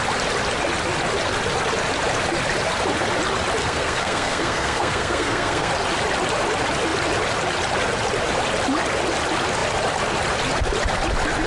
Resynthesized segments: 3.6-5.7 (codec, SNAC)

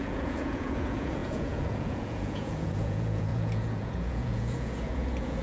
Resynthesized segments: 0.0-5.4 (vocoder, Vocos)